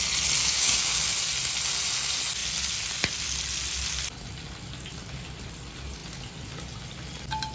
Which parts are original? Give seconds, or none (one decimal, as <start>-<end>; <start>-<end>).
0.0-0.4; 1.0-7.5